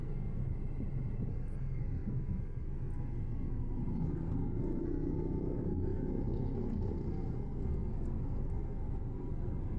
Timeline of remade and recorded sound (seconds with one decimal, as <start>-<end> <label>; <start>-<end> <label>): 0.0-0.4 remade; 0.4-1.3 recorded; 1.3-9.8 remade